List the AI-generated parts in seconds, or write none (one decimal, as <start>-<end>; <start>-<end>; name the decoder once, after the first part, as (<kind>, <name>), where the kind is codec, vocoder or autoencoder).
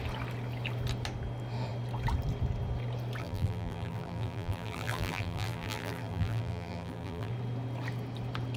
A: 3.2-7.3 (vocoder, BigVGAN v2)